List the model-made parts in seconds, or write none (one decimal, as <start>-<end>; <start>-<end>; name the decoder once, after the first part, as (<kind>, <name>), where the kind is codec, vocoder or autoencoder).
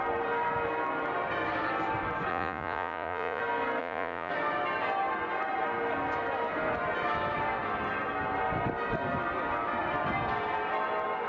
2.3-3.4 (vocoder, Vocos); 3.8-4.3